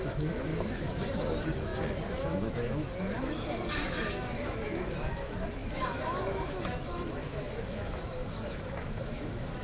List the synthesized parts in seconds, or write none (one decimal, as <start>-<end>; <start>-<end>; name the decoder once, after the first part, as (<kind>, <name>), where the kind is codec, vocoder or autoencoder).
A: 0.0-1.7 (autoencoder, DAC-VAE); 2.2-9.6